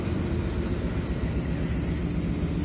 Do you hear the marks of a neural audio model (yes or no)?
no